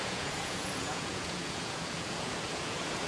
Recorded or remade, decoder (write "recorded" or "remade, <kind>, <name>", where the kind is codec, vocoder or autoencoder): remade, vocoder, Vocos